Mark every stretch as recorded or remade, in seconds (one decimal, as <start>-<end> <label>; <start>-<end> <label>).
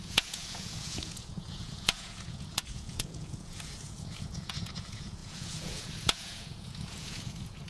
0.0-7.7 remade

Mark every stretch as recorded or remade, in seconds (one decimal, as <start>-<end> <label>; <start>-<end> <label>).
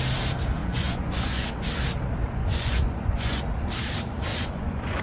0.0-0.6 recorded; 0.6-1.5 remade; 1.5-2.4 recorded; 2.4-3.4 remade; 3.4-4.3 recorded; 4.3-5.0 remade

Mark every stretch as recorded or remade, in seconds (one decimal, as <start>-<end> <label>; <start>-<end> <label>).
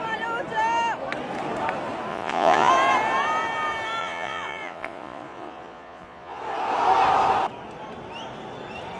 0.0-2.1 recorded; 2.1-2.7 remade; 2.7-4.0 recorded; 4.0-6.4 remade; 6.4-9.0 recorded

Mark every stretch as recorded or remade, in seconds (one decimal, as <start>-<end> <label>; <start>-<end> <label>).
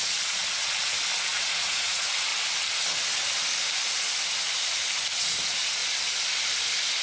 0.0-0.4 remade; 0.4-1.2 recorded; 1.2-2.3 remade; 2.3-5.2 recorded; 5.2-5.8 remade; 5.8-7.0 recorded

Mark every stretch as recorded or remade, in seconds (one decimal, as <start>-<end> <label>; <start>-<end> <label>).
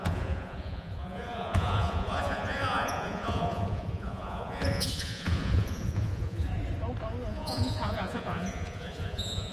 0.0-6.5 remade; 6.5-7.3 recorded; 7.3-9.5 remade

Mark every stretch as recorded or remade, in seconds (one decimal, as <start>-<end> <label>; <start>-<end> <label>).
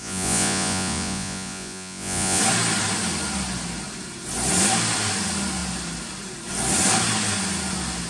0.0-2.4 remade; 2.4-8.1 recorded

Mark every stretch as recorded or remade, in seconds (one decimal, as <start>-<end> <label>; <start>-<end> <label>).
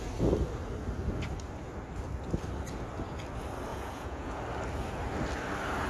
0.0-3.7 recorded; 3.7-4.4 remade; 4.4-5.9 recorded